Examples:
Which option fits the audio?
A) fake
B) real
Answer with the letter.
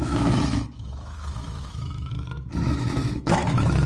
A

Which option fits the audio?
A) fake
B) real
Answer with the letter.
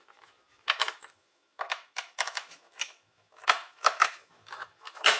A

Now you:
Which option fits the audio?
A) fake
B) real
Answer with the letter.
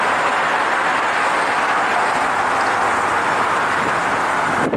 B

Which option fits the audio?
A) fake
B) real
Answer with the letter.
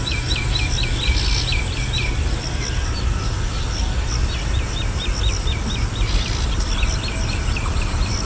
B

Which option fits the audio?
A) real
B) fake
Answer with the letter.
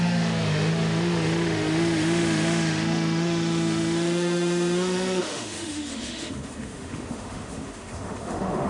B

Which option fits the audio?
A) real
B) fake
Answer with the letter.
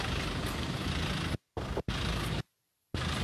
A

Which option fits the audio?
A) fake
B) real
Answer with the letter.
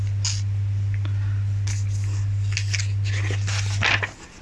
B